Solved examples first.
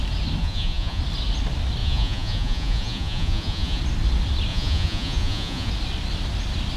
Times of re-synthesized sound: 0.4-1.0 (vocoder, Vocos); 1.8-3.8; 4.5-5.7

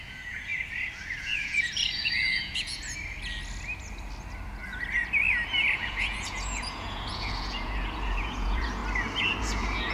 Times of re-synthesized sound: 0.0-0.5 (vocoder, Vocos); 1.2-2.8; 5.7-8.8; 9.4-9.9